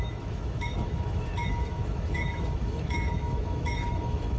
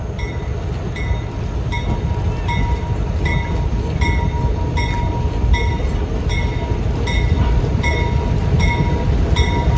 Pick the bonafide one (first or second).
second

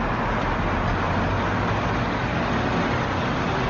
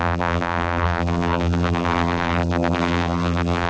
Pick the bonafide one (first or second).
first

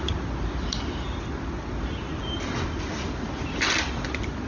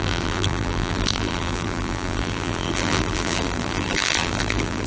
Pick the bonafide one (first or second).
first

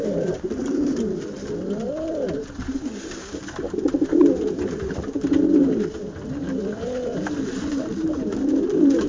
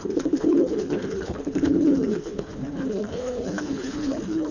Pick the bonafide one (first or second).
first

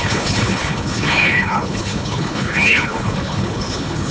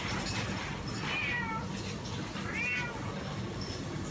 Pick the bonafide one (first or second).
second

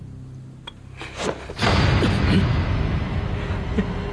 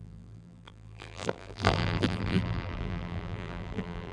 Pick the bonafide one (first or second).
first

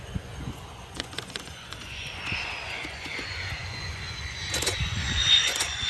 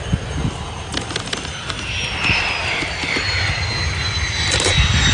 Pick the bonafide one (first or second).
second